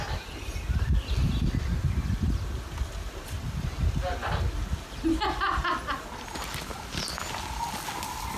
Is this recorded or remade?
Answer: recorded